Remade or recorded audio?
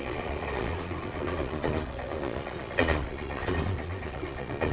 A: remade